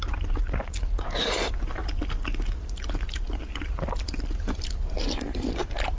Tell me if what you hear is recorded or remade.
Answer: recorded